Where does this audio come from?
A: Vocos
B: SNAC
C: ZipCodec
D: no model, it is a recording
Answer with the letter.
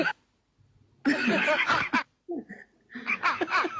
D